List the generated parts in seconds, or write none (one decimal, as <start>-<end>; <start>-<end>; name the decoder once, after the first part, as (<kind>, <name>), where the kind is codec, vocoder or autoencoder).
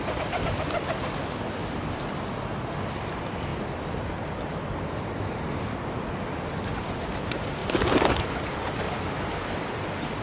7.6-8.2 (vocoder, BigVGAN v2)